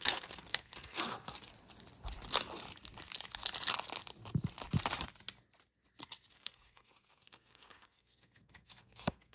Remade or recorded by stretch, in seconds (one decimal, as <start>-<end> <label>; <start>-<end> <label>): 0.0-1.5 remade; 1.5-6.3 recorded; 6.3-9.3 remade